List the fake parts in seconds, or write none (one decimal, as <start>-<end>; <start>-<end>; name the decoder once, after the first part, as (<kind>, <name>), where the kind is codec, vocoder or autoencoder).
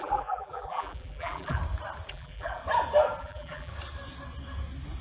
0.0-1.6 (vocoder, BigVGAN v2); 2.1-2.6; 3.2-3.7